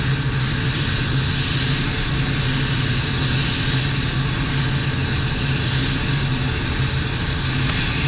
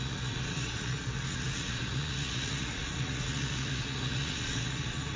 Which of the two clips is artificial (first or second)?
second